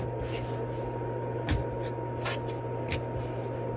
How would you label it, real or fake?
real